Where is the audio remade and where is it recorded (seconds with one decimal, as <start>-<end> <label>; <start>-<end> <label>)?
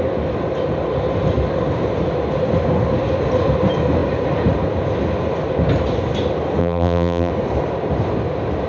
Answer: 0.0-6.6 recorded; 6.6-7.3 remade; 7.3-8.7 recorded